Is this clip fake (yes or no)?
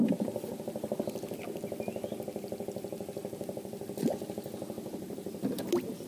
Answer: no